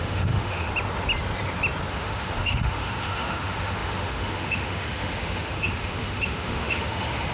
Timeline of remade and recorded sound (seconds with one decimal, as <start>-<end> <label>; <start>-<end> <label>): 0.0-0.7 remade; 0.7-1.9 recorded; 1.9-7.3 remade